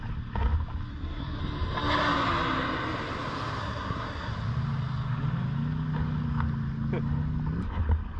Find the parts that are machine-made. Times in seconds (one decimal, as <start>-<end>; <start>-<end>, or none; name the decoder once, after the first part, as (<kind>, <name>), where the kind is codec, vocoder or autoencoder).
0.9-1.4 (codec, SNAC); 3.6-4.3